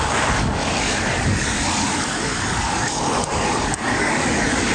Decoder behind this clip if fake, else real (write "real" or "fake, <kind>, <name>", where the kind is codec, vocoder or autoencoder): fake, codec, DAC